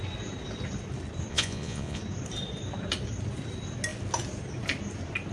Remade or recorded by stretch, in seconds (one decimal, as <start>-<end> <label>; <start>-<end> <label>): 0.0-1.3 recorded; 1.3-2.0 remade; 2.0-5.3 recorded